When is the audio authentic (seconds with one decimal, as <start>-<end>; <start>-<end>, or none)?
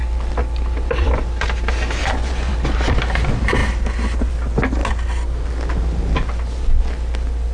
0.0-2.0; 2.5-7.5